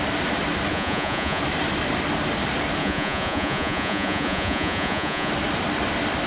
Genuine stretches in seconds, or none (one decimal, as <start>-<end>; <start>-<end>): 0.0-0.7; 1.4-2.8; 5.3-6.3